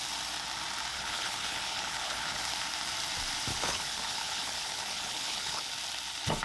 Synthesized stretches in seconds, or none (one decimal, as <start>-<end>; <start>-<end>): 0.9-2.4; 3.5-5.7